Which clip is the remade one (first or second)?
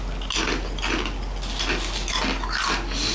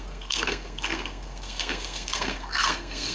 second